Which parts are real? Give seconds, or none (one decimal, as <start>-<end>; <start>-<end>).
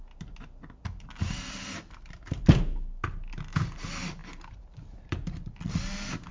0.0-4.2; 5.7-6.3